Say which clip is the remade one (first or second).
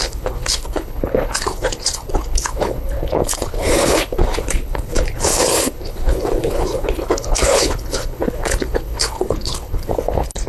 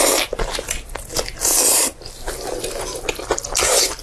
first